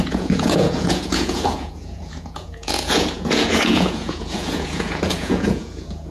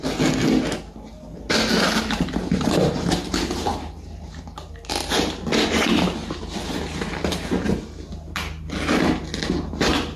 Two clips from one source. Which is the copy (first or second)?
first